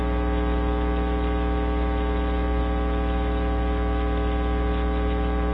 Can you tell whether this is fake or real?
real